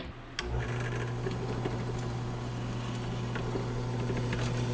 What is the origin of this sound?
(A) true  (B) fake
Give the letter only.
A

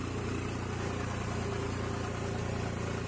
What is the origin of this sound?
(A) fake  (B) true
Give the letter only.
B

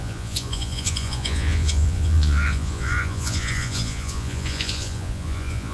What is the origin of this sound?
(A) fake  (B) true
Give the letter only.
A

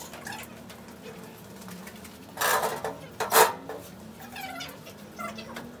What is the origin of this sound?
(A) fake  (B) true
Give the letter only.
B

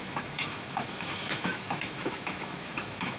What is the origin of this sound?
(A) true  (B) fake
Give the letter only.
B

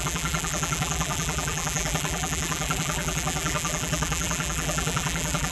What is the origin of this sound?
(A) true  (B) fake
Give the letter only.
B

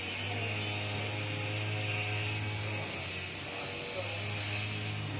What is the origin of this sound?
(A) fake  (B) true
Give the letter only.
B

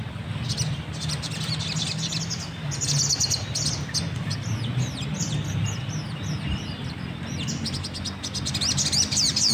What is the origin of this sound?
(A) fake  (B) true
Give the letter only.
B